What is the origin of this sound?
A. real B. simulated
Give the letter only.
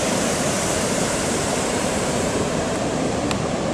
B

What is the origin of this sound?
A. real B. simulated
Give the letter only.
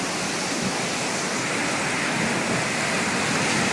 A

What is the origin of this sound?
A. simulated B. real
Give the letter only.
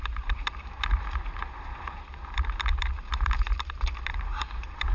A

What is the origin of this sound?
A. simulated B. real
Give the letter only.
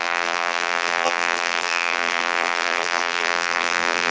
A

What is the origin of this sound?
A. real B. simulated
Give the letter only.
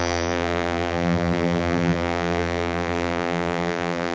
B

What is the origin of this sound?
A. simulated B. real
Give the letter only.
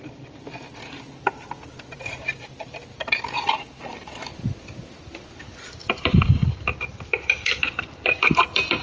A